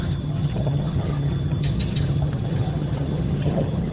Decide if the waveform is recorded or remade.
remade